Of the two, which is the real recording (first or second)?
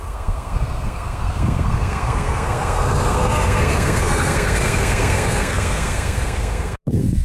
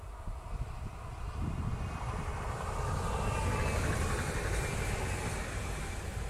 second